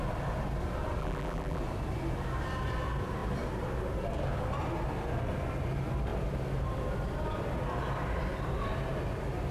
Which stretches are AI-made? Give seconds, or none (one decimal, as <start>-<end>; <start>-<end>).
1.0-1.6